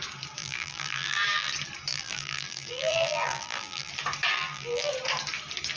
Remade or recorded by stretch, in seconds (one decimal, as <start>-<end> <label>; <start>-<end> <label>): 0.0-0.4 recorded; 0.4-1.5 remade; 1.5-1.9 recorded; 1.9-3.9 remade; 3.9-4.3 recorded; 4.3-4.9 remade; 4.9-5.8 recorded